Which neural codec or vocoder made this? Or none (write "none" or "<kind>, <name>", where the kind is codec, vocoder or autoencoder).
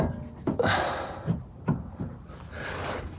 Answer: none